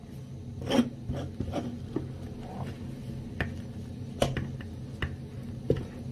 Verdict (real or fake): real